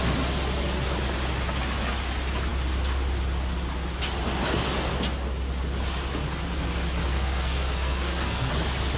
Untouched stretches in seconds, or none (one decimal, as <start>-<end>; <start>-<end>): 0.0-7.0; 8.5-9.0